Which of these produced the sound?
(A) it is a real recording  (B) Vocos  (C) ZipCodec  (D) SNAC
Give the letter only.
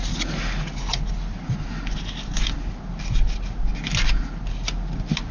A